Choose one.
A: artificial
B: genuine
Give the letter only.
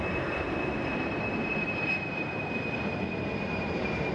A